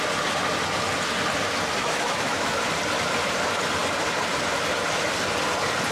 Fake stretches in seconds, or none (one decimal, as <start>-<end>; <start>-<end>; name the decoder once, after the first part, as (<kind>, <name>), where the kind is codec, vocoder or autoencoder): 1.8-2.6 (autoencoder, DAC-VAE)